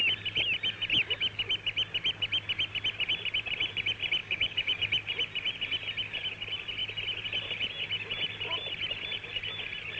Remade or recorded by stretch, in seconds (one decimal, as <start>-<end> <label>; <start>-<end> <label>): 0.0-4.2 recorded; 4.2-4.8 remade; 4.8-10.0 recorded